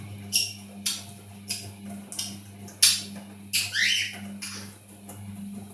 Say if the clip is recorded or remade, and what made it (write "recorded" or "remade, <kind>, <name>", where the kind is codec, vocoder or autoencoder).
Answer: recorded